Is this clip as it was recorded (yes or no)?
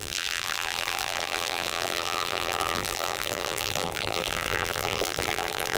no